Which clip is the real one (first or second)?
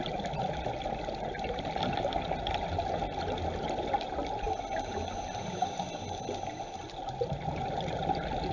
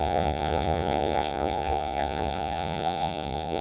first